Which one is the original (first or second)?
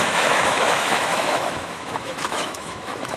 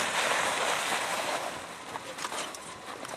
second